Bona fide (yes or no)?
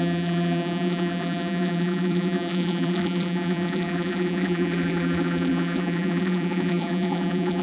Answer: no